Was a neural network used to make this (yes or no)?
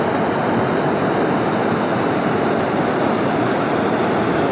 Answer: no